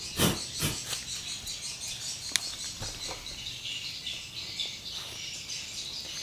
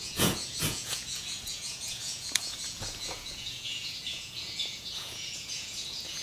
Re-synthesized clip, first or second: second